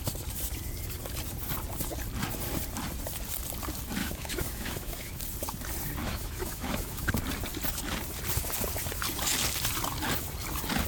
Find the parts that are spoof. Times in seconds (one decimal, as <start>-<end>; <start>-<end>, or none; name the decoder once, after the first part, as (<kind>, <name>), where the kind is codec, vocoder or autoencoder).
4.0-5.2 (autoencoder, DAC-VAE); 6.0-7.1